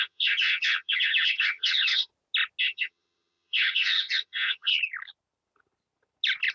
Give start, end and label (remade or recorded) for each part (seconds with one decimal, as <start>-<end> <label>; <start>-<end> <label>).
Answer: 0.0-2.1 remade; 2.1-2.6 recorded; 2.6-4.7 remade; 4.7-6.5 recorded